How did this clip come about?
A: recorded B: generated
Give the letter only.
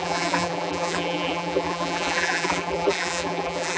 B